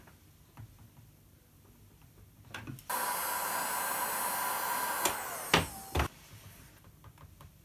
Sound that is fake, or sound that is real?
real